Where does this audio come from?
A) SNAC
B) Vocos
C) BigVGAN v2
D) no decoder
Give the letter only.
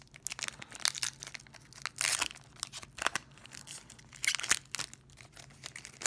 D